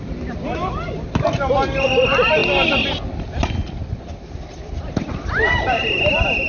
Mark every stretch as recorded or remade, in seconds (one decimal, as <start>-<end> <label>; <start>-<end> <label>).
0.0-6.5 recorded

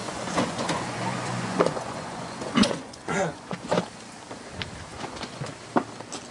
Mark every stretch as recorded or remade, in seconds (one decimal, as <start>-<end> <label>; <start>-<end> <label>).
0.0-3.8 remade; 3.8-4.9 recorded; 4.9-5.4 remade; 5.4-6.3 recorded